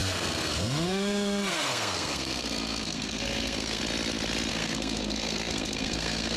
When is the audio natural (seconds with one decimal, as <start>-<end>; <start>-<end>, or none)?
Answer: 3.8-4.5